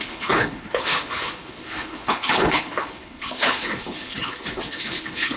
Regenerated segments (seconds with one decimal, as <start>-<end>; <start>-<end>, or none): 0.0-5.4